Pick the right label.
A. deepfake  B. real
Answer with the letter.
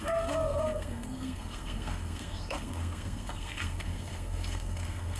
A